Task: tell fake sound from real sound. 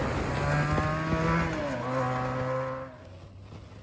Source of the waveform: real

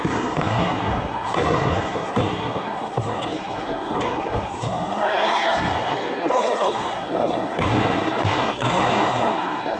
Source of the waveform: fake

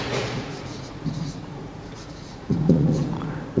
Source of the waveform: fake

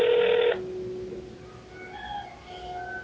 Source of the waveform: real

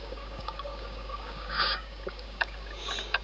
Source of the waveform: fake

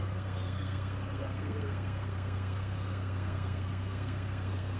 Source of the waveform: fake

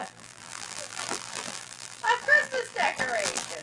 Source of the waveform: fake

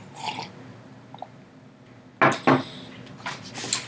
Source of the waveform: real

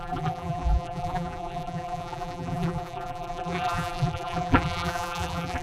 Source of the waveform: fake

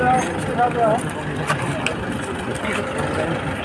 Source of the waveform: real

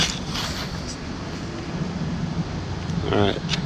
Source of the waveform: real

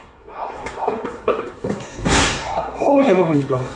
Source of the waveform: fake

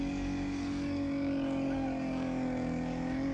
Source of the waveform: fake